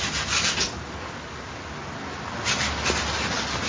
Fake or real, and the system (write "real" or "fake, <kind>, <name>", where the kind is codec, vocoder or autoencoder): real